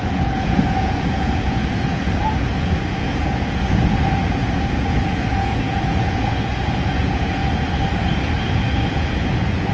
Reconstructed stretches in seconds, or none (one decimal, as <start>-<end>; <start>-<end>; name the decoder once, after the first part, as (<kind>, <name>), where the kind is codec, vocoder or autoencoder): 0.0-7.4 (vocoder, Vocos); 8.4-9.7